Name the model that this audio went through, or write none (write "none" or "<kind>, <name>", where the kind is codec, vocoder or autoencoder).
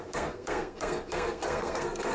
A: codec, SNAC